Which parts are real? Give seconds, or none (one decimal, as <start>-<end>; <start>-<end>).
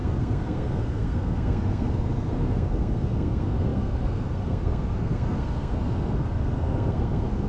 none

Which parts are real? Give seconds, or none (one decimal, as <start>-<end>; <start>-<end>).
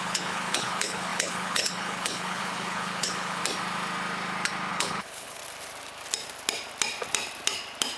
3.4-4.7; 5.4-8.0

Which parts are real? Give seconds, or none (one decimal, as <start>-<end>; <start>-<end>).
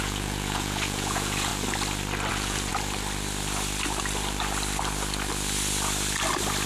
1.5-2.3; 2.7-6.7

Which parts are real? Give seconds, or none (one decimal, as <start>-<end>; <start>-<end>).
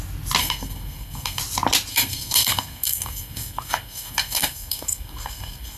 0.0-0.4; 1.4-1.9